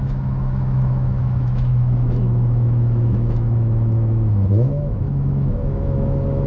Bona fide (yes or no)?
no